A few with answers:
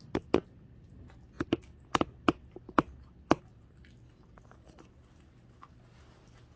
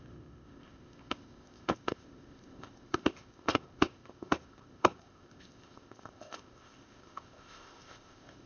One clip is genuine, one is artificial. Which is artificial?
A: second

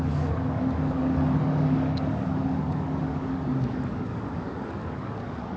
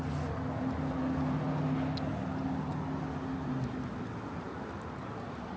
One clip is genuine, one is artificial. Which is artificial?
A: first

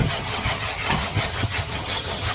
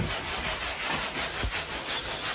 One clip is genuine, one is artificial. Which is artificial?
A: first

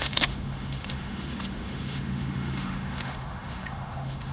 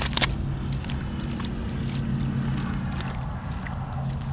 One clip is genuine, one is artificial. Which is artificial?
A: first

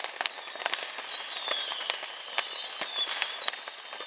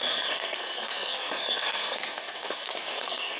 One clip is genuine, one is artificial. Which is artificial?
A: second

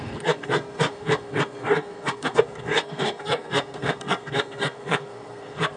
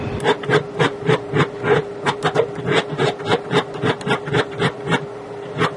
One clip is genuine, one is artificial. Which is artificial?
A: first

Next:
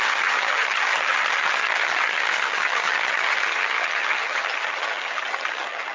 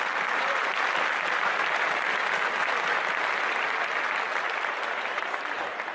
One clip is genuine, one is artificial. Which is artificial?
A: first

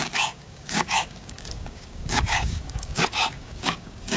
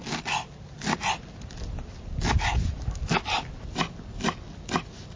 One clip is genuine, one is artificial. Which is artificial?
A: first